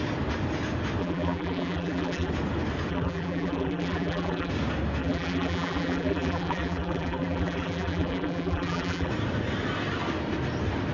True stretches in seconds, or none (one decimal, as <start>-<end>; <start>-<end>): 0.0-1.0; 2.3-2.9; 4.5-5.0; 9.1-10.9